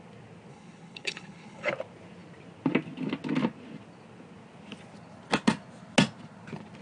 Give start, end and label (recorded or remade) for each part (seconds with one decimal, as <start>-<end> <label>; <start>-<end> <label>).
0.0-0.5 recorded; 0.5-1.7 remade; 1.7-6.8 recorded

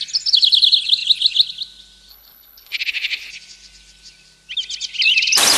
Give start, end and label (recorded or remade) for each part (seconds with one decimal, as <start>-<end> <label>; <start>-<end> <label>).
0.0-2.1 recorded; 2.1-3.3 remade; 3.3-5.6 recorded

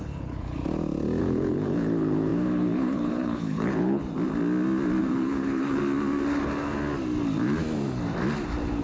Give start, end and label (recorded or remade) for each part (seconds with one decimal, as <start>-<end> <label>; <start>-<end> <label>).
0.0-0.6 remade; 0.6-1.2 recorded; 1.2-4.0 remade; 4.0-5.0 recorded; 5.0-5.8 remade; 5.8-8.8 recorded

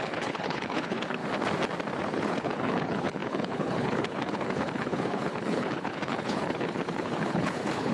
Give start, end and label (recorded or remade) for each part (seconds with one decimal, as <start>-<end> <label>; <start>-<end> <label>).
0.0-1.2 remade; 1.2-2.0 recorded; 2.0-7.9 remade